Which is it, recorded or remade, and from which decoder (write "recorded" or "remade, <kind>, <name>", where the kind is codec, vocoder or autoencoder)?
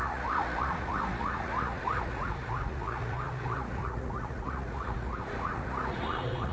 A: remade, vocoder, Vocos